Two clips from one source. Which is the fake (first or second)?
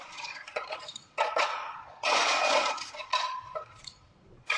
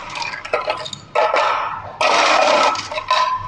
first